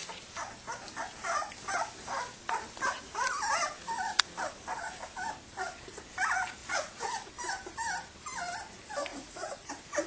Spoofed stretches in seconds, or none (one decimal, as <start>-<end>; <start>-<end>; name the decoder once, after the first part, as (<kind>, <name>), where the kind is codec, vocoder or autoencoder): 6.6-7.3 (vocoder, Vocos); 9.1-9.7